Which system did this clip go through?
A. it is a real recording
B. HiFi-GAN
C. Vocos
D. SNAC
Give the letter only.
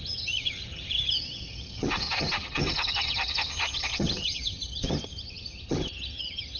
B